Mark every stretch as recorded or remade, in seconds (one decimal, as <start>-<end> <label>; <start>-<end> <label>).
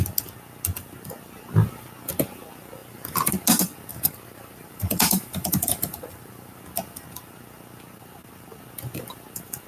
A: 0.0-2.8 recorded; 2.8-3.3 remade; 3.3-3.9 recorded; 3.9-6.6 remade; 6.6-9.7 recorded